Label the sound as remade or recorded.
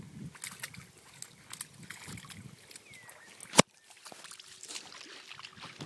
recorded